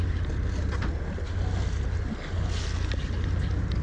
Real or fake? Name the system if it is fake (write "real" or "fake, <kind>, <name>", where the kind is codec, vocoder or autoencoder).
real